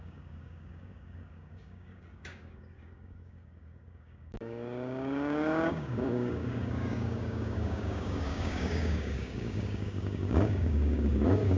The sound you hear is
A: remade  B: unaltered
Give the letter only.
A